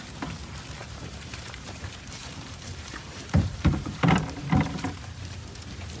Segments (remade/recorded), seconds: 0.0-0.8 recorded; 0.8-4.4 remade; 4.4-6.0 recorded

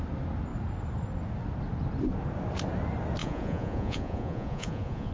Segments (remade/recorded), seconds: 0.0-3.2 recorded; 3.2-5.1 remade

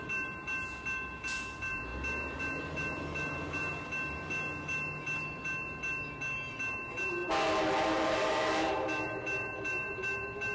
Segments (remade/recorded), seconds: 0.0-1.9 remade; 1.9-2.4 recorded; 2.4-3.7 remade; 3.7-6.7 recorded; 6.7-7.2 remade; 7.2-7.8 recorded; 7.8-10.5 remade